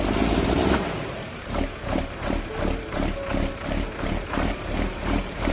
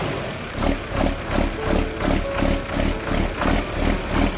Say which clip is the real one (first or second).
second